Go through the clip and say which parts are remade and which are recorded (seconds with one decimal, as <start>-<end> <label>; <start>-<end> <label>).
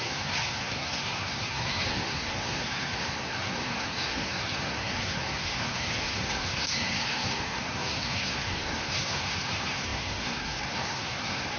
0.0-11.6 remade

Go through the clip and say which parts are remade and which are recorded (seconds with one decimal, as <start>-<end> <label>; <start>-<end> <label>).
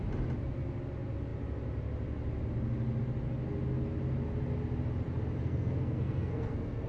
0.0-5.4 recorded; 5.4-6.9 remade